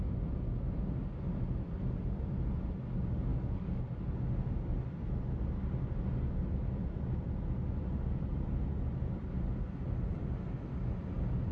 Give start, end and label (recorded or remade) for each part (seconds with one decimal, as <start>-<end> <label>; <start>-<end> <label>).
0.0-3.3 recorded; 3.3-3.8 remade; 3.8-11.5 recorded